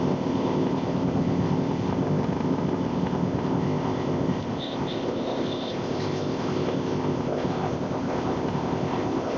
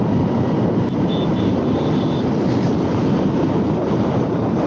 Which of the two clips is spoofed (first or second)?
first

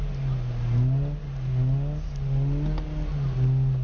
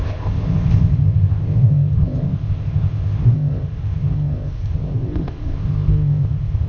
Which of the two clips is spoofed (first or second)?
second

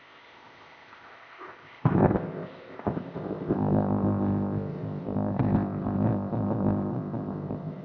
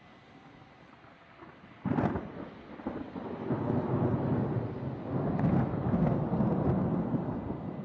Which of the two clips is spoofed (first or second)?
first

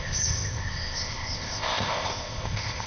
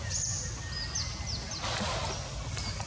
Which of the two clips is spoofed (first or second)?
first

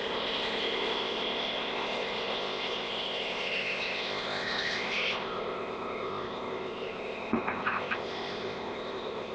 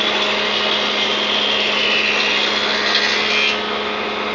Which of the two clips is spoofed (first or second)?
first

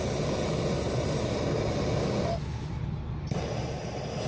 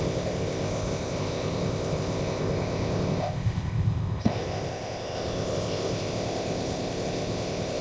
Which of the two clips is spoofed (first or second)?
second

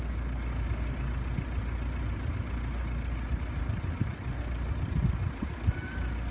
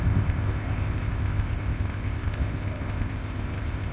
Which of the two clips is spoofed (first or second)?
second